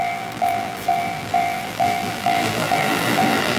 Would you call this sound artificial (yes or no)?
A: yes